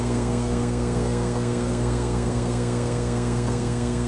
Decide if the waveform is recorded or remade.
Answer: remade